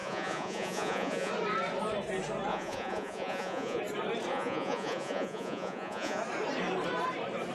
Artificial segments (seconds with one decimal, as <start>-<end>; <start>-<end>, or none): 0.0-1.3; 2.5-3.8; 4.3-6.2